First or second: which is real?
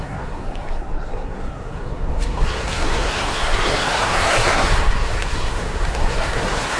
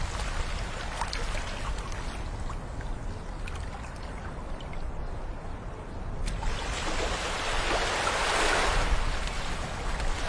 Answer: second